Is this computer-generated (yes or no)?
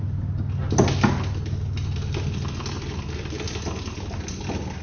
no